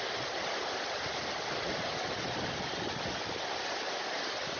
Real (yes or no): yes